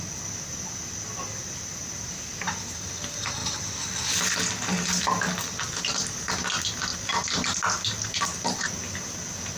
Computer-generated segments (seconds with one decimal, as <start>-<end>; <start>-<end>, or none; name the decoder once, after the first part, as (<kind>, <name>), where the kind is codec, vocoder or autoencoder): none